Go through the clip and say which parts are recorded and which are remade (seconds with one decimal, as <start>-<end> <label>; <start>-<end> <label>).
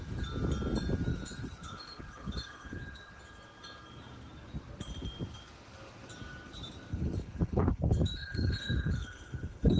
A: 0.0-1.1 recorded; 1.1-3.2 remade; 3.2-6.9 recorded; 6.9-9.8 remade